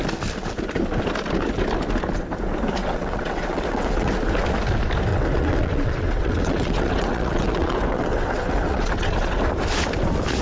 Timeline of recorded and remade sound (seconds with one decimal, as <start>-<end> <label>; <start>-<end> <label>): 0.0-2.8 recorded; 2.8-4.1 remade; 4.1-5.1 recorded; 5.1-9.4 remade; 9.4-10.4 recorded